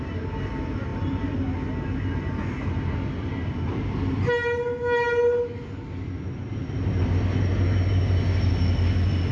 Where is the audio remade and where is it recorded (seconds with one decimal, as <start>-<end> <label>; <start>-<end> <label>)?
0.0-9.3 recorded